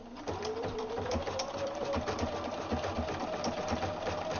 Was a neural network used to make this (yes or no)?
yes